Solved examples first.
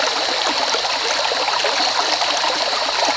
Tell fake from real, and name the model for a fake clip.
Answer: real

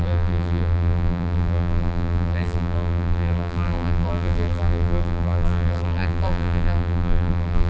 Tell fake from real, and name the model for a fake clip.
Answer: fake, vocoder, BigVGAN v2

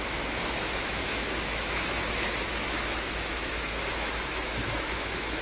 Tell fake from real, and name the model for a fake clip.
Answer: fake, autoencoder, DAC-VAE